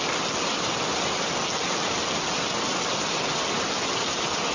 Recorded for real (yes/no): yes